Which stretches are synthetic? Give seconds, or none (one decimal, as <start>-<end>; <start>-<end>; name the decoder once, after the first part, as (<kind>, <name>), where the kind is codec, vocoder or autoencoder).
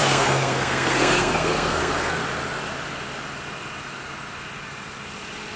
0.0-2.2 (codec, SNAC)